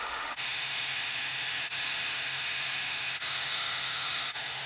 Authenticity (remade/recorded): remade